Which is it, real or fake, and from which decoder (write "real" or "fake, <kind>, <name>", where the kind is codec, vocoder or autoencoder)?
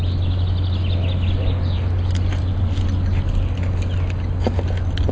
real